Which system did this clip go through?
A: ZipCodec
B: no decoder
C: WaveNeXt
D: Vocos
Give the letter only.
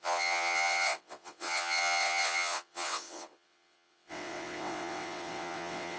C